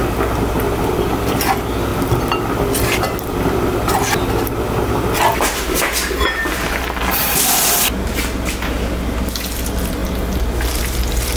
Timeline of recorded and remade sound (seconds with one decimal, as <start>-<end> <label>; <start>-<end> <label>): 0.0-11.4 recorded